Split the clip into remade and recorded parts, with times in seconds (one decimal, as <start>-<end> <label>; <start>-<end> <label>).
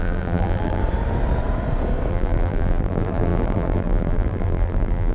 0.0-0.8 remade; 0.8-2.1 recorded; 2.1-5.1 remade